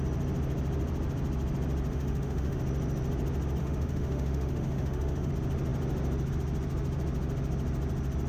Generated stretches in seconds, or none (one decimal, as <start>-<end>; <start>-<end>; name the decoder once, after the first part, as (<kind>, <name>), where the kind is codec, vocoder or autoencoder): 1.9-2.6 (autoencoder, DAC-VAE); 3.6-5.3